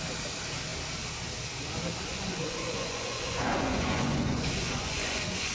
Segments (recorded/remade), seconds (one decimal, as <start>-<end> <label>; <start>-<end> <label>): 0.0-2.1 recorded; 2.1-5.5 remade